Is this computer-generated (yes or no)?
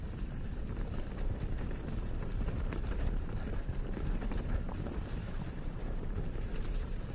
yes